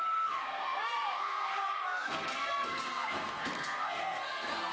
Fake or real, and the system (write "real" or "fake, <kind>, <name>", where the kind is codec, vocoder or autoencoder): fake, codec, SNAC